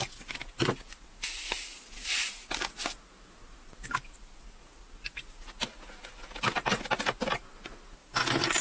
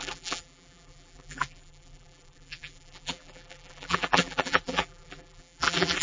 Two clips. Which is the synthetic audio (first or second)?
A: second